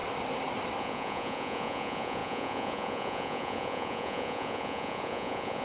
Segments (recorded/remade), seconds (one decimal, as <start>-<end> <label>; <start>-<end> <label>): 0.0-0.8 recorded; 0.8-5.6 remade